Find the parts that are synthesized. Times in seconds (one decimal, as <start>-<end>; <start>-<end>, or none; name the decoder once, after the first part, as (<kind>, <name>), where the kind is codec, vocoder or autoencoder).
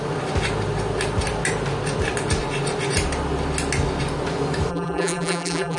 4.7-5.8 (vocoder, BigVGAN v2)